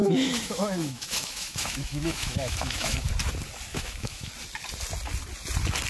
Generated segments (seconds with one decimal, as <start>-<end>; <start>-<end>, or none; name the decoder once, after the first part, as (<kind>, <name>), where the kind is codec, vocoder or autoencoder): 0.0-3.1 (autoencoder, DAC-VAE); 3.7-4.3